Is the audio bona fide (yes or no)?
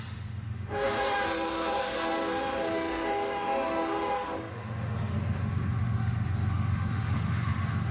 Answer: no